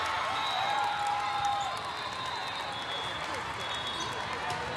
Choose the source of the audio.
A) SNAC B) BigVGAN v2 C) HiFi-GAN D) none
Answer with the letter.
D